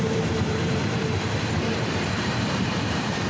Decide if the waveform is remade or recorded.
remade